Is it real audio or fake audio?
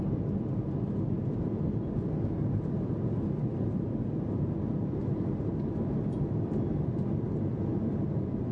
real